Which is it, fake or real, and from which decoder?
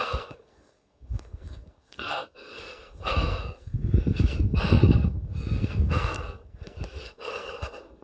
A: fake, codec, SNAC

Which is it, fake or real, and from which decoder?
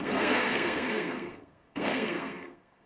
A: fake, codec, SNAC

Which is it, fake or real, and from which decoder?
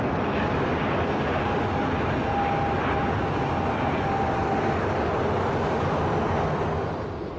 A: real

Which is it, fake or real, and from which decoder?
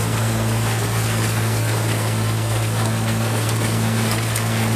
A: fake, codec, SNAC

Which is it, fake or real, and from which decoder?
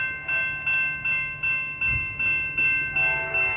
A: real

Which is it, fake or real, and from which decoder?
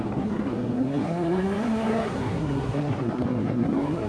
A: fake, codec, SNAC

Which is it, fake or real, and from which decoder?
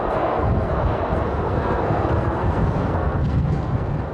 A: fake, codec, SNAC